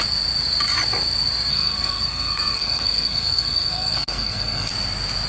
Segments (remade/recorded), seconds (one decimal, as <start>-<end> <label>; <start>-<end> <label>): 0.0-1.5 recorded; 1.5-4.7 remade; 4.7-5.3 recorded